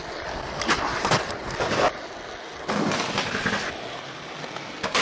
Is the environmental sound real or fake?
real